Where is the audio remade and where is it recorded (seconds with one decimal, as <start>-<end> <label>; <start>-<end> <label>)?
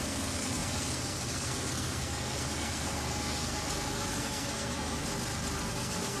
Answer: 0.0-5.1 remade; 5.1-5.7 recorded; 5.7-6.2 remade